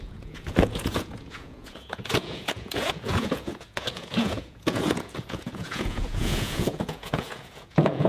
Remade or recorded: remade